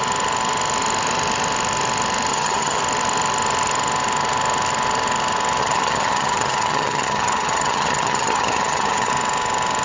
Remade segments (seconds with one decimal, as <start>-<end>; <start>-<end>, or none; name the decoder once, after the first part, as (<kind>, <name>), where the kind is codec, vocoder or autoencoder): 2.3-2.8 (vocoder, HiFi-GAN); 5.6-9.1